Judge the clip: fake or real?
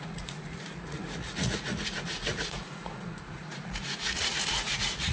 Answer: fake